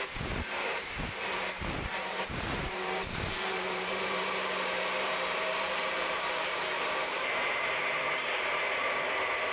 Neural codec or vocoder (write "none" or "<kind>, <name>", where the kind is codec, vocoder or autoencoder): vocoder, BigVGAN v2